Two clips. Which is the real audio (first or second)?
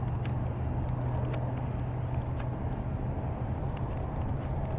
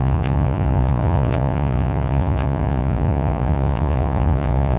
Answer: first